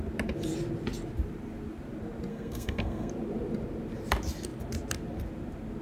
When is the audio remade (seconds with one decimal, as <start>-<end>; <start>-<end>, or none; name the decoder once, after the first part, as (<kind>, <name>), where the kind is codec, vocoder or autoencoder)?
2.3-3.1 (codec, SNAC)